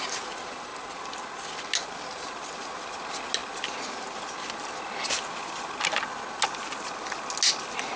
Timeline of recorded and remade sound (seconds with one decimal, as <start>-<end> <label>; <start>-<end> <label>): 0.0-8.0 recorded